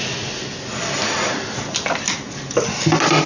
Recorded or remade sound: recorded